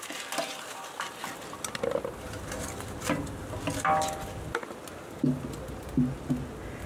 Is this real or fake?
real